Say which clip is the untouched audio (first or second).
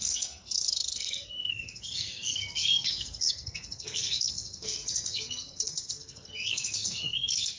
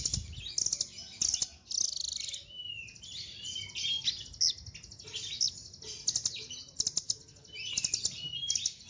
second